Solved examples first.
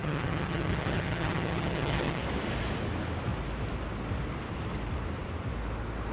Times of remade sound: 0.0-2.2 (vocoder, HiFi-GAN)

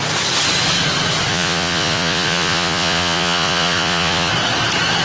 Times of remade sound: 1.3-4.3 (vocoder, Vocos)

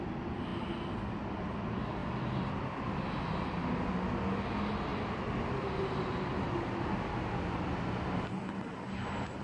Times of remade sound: none

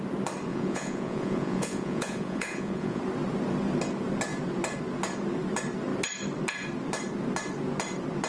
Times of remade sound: 0.5-3.0 (vocoder, Vocos)